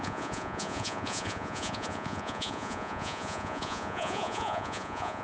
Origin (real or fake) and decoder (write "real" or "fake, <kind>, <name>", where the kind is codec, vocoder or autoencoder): fake, vocoder, Vocos